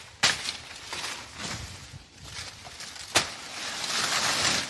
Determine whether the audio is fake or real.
real